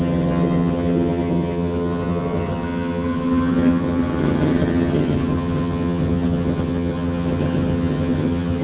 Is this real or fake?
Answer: fake